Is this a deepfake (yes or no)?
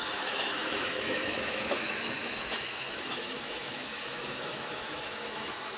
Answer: yes